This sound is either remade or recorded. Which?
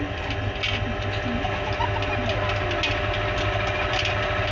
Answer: recorded